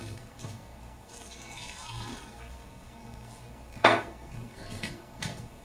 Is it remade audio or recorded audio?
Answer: remade